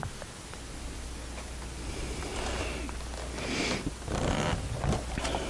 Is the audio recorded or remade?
recorded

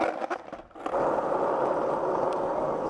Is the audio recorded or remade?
recorded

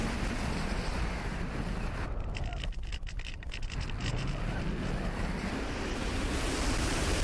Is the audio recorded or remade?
recorded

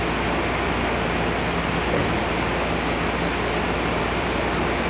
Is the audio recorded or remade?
recorded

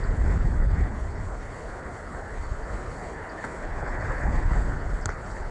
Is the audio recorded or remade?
remade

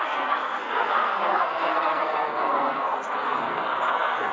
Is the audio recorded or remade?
remade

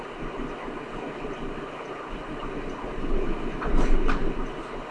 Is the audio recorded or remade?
recorded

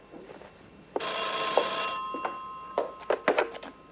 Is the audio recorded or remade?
recorded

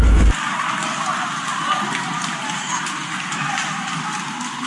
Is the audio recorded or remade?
recorded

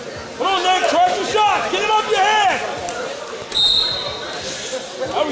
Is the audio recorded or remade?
recorded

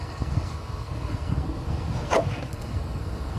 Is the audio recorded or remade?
remade